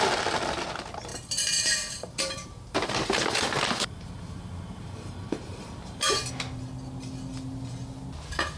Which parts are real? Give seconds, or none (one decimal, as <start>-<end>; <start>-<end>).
0.0-1.1; 6.3-8.6